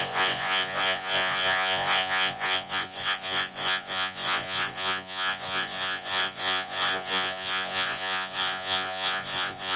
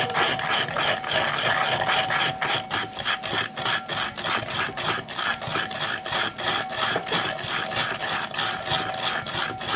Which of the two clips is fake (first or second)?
first